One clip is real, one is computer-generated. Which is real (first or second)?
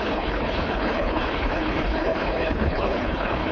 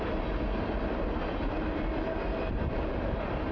second